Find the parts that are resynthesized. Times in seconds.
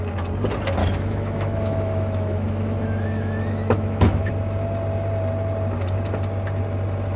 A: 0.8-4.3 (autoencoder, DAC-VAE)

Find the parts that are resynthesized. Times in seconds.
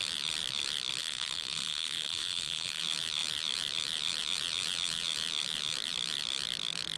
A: 1.0-2.8 (codec, SNAC)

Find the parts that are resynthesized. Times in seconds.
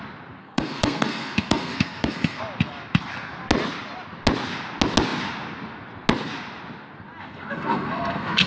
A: 0.4-2.4 (codec, SNAC); 7.2-8.5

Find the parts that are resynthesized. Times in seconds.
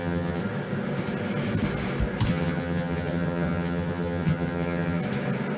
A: 0.0-0.4 (vocoder, HiFi-GAN); 2.3-5.0